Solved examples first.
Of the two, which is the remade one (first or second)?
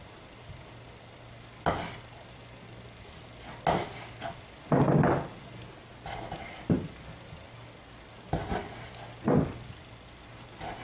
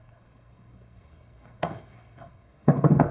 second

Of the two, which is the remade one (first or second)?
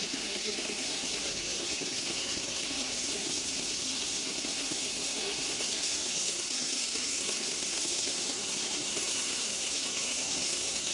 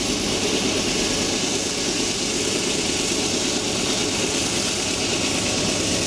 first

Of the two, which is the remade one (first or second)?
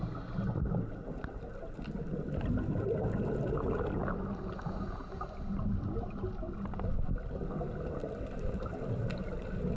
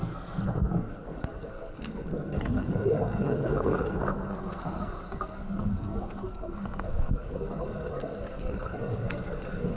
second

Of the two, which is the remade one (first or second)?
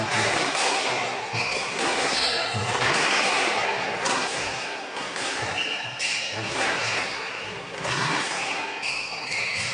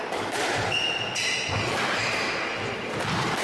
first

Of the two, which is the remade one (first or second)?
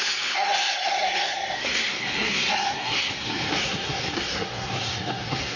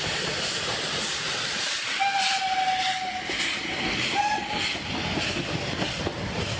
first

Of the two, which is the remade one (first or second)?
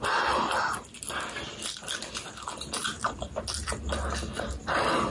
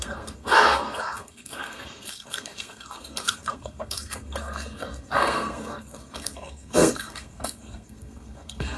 second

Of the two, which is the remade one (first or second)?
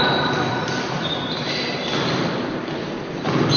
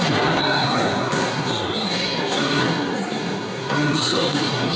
second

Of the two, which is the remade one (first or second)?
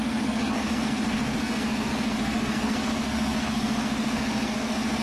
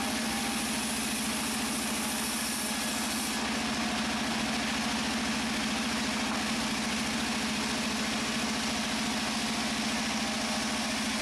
first